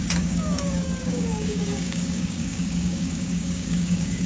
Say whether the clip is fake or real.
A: fake